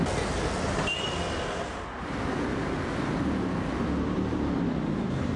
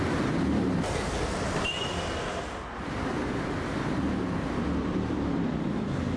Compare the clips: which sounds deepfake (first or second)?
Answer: second